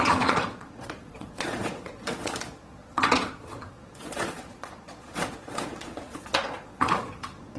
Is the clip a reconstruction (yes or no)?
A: yes